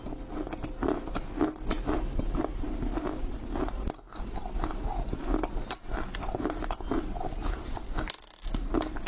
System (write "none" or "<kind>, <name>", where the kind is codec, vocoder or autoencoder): none